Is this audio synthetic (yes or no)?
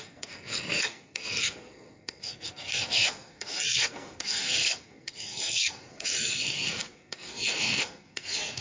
yes